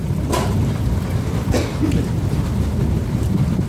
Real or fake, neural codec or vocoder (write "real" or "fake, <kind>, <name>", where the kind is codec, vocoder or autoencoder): fake, vocoder, BigVGAN v2